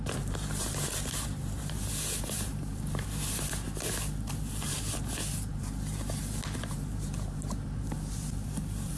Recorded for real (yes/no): no